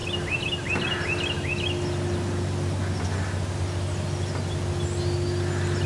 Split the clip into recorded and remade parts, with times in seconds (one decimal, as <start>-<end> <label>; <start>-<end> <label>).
0.0-5.9 recorded